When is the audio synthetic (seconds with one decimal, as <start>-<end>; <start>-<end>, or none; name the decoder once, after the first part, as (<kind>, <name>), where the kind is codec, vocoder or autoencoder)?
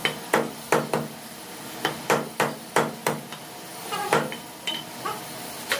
none